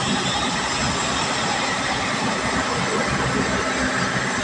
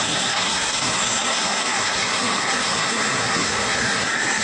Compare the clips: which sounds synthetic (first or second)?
second